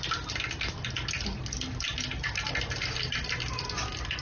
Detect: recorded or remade recorded